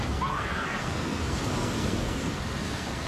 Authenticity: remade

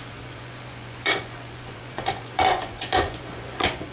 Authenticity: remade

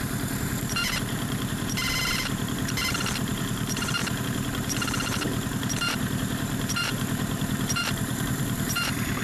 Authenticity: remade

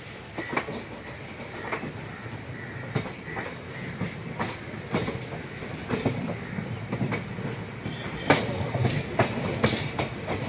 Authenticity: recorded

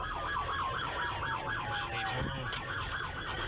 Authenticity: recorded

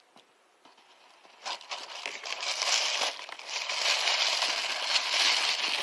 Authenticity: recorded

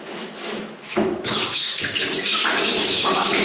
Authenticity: remade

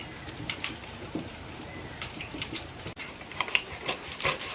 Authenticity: remade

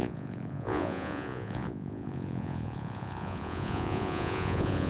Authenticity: remade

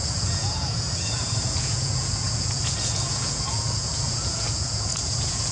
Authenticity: remade